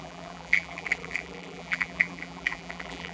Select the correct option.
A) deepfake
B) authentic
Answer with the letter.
A